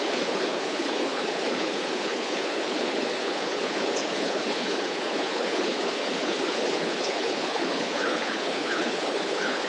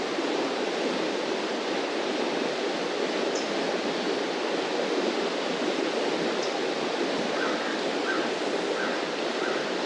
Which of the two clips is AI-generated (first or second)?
first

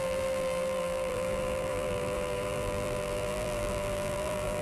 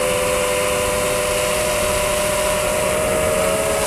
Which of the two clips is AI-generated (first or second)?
first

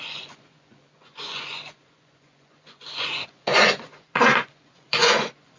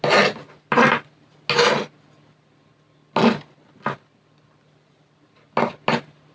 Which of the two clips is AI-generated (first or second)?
first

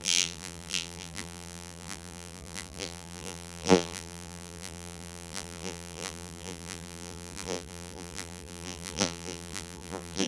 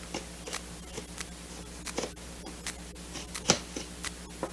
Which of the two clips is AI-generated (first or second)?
first